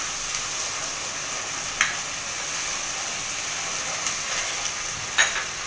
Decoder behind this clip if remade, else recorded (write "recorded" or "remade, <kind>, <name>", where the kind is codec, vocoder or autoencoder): recorded